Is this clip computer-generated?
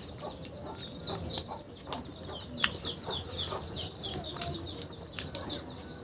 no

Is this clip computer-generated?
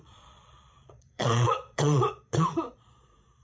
yes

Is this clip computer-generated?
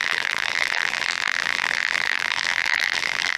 yes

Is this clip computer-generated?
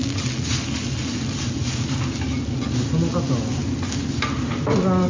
no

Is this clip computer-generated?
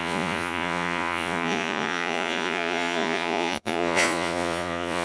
yes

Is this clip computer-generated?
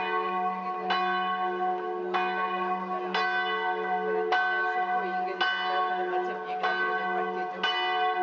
no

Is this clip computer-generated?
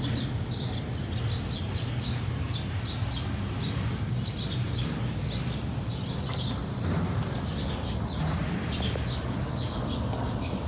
no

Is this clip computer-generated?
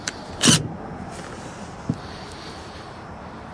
no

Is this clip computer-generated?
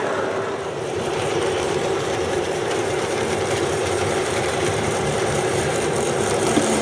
yes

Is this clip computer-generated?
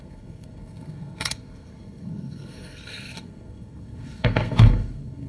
yes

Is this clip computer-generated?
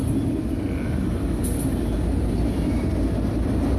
no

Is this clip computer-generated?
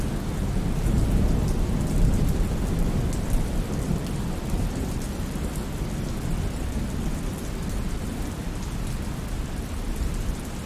no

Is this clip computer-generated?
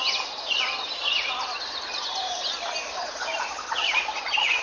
no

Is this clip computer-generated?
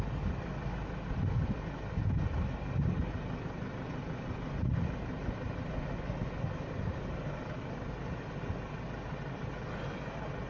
no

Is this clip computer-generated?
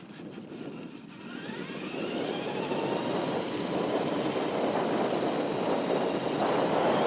no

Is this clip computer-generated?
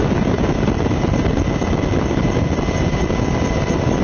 no